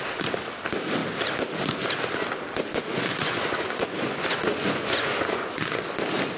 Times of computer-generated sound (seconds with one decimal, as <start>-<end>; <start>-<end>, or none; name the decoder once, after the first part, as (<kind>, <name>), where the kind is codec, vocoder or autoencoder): 2.7-5.8 (vocoder, Vocos)